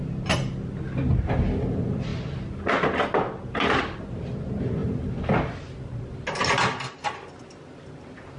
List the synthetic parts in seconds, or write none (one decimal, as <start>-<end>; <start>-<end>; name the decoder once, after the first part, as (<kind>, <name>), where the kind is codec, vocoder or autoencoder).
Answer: none

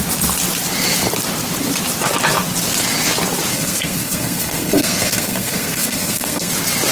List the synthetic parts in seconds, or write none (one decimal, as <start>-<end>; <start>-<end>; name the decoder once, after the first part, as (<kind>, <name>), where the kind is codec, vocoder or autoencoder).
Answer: 3.5-6.5 (codec, SNAC)

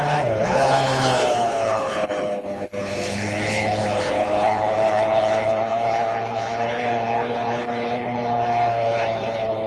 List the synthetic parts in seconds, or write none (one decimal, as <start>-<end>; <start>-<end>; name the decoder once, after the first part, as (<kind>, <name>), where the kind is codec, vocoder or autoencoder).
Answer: 0.0-9.7 (codec, HILCodec)

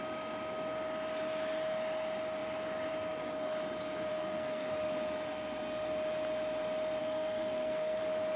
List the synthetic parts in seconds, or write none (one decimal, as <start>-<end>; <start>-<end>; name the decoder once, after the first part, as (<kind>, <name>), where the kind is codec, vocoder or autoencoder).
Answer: 4.1-4.7 (codec, SNAC); 7.0-8.0

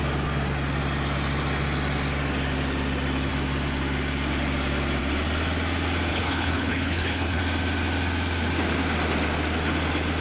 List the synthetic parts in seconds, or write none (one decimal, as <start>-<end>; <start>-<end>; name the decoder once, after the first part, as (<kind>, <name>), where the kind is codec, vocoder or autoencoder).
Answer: 6.1-7.4 (codec, HILCodec)

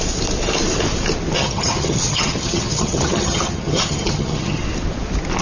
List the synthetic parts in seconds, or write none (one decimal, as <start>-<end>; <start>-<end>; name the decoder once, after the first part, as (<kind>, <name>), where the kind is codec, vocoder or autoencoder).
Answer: 1.4-4.6 (vocoder, HiFi-GAN)